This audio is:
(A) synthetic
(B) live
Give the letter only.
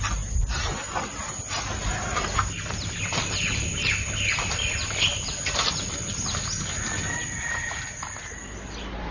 B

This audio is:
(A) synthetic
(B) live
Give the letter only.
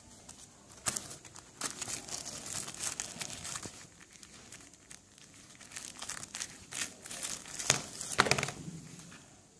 B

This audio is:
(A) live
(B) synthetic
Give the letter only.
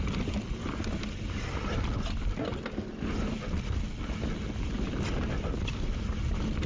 A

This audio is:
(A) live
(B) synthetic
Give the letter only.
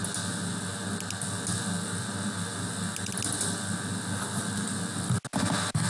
A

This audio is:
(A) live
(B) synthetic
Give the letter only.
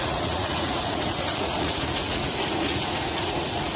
B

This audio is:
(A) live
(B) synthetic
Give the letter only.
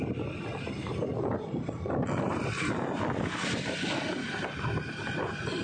A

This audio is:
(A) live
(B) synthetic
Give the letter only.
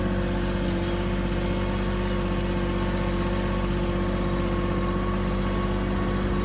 A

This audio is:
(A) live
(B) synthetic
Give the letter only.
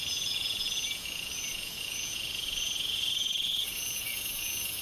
B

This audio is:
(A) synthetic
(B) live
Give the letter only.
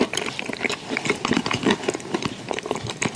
B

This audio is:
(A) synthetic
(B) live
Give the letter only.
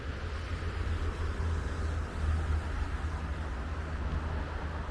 B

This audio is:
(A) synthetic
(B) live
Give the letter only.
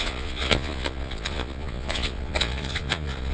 A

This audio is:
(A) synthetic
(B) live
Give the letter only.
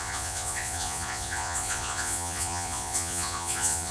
A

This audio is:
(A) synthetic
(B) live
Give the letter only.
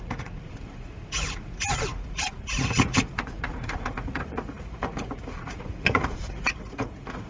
A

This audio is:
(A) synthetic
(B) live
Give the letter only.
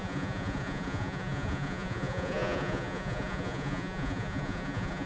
A